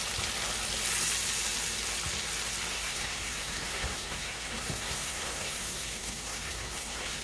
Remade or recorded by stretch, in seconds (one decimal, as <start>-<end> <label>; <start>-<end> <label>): 0.0-2.7 recorded; 2.7-7.2 remade